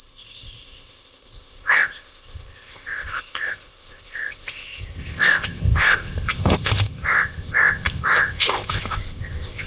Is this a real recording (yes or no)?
no